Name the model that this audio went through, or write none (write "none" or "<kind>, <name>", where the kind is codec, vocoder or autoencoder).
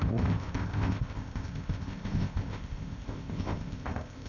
codec, ZipCodec